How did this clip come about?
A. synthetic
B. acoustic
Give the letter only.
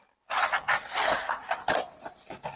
B